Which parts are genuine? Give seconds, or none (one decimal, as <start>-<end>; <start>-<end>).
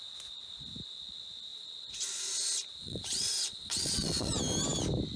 0.0-2.8; 4.3-5.2